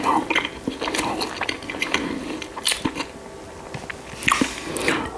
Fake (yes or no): no